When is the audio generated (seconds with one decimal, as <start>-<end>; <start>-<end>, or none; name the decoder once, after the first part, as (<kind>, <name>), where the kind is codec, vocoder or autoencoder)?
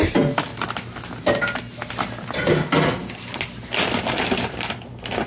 0.0-0.5 (vocoder, BigVGAN v2); 2.9-5.3